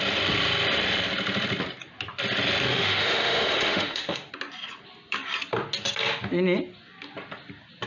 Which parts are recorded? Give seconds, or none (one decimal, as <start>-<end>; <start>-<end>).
0.0-2.7; 4.3-7.9